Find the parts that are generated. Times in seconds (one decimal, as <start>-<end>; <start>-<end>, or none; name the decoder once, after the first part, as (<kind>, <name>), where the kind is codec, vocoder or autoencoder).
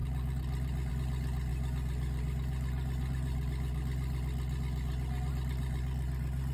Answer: none